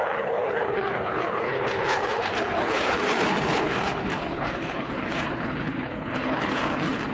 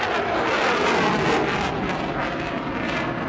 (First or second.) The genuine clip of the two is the second